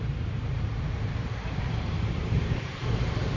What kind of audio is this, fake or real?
fake